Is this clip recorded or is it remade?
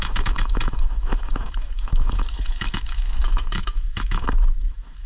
remade